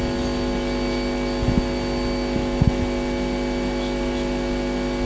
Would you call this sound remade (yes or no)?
no